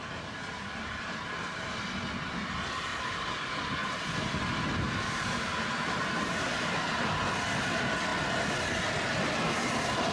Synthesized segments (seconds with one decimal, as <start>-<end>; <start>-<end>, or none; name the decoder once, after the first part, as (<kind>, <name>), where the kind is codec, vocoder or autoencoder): 2.9-3.7 (vocoder, BigVGAN v2); 5.5-7.2